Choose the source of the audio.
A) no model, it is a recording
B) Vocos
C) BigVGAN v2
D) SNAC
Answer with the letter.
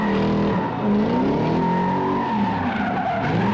A